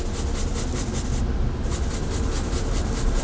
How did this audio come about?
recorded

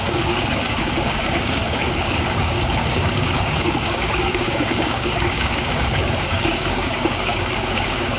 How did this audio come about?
remade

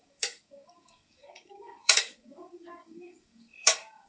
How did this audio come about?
remade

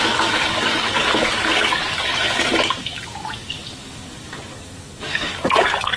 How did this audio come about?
remade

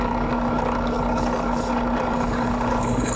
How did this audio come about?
remade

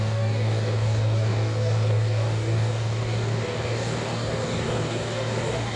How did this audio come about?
remade